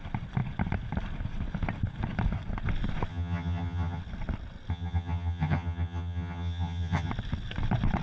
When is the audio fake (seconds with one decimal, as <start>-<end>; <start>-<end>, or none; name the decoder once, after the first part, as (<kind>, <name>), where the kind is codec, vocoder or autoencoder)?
3.1-4.0 (vocoder, HiFi-GAN); 4.7-7.1